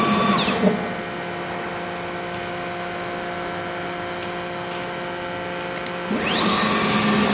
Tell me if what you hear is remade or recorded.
recorded